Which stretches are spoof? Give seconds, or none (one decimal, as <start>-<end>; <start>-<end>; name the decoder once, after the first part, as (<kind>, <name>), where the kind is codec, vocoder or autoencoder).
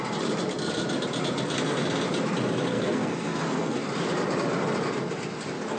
2.7-3.8 (codec, SNAC)